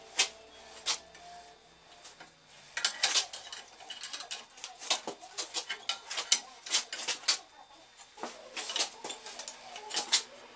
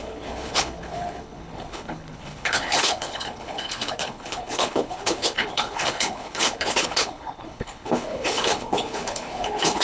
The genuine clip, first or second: first